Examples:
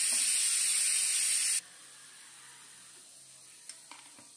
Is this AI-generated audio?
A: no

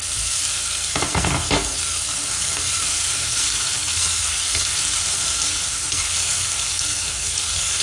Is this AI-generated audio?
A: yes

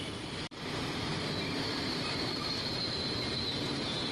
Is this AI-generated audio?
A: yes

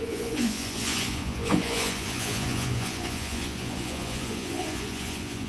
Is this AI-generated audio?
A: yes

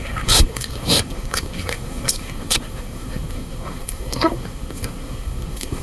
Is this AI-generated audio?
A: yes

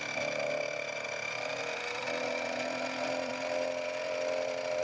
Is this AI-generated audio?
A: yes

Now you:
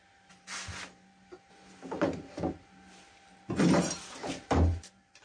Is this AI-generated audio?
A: no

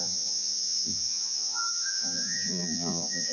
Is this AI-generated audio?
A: yes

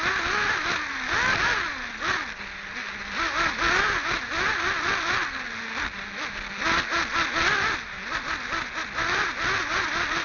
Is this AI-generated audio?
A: no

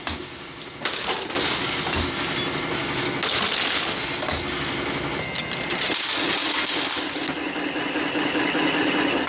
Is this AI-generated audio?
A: no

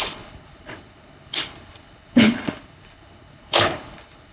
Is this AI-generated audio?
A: yes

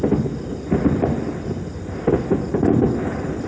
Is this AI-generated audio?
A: no